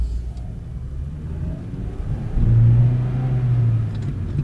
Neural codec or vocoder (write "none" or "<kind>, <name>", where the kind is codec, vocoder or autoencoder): none